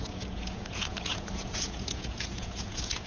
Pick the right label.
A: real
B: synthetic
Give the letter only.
B